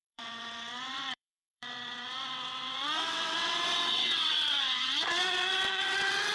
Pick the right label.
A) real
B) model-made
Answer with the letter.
B